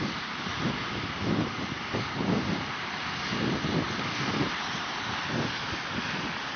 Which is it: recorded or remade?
recorded